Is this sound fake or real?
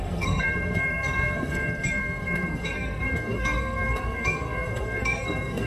fake